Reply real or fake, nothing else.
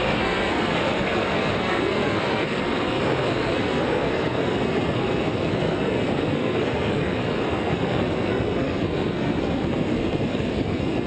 fake